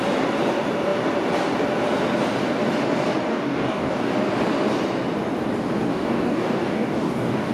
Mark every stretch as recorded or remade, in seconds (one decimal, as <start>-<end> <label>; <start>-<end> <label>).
0.0-3.3 recorded; 3.3-4.1 remade; 4.1-5.9 recorded; 5.9-7.5 remade